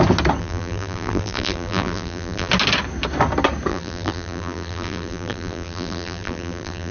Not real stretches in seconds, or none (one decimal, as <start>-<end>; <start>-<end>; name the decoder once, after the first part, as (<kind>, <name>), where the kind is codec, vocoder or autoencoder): 0.4-2.5 (vocoder, BigVGAN v2); 3.7-6.9